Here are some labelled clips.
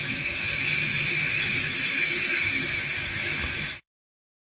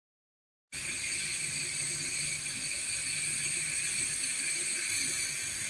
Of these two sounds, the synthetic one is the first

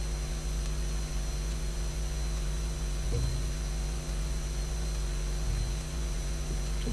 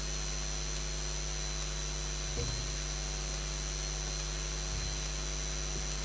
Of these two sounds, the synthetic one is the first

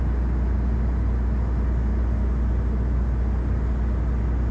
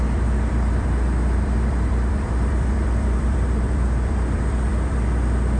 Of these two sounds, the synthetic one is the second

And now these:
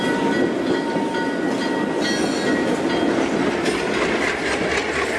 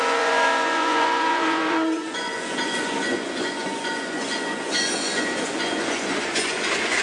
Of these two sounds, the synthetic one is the second